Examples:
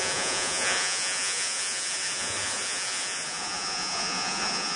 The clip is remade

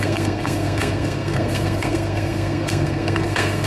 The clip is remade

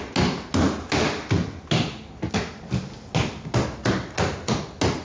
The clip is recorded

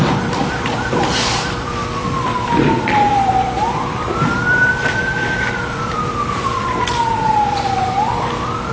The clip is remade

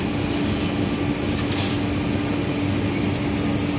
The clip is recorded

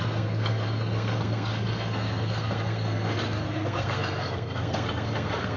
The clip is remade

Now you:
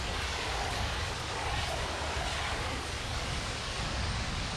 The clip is remade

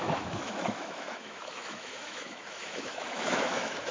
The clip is remade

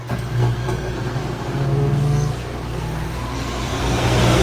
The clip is remade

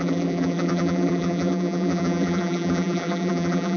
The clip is remade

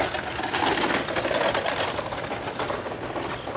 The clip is recorded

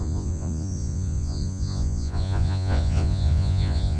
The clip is remade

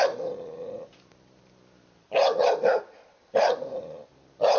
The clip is recorded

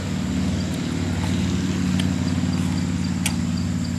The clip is recorded